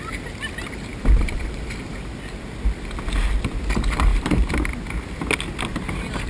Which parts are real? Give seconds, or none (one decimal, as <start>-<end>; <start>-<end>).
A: 0.0-0.9; 2.2-4.1; 4.7-6.3